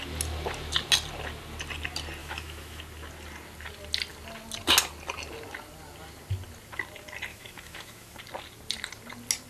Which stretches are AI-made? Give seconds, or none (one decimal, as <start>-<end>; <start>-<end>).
2.2-2.8; 7.3-8.2